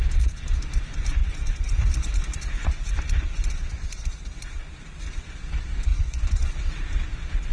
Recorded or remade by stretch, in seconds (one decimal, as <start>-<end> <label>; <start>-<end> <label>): 0.0-1.2 recorded; 1.2-1.8 remade; 1.8-5.9 recorded; 5.9-6.5 remade; 6.5-7.5 recorded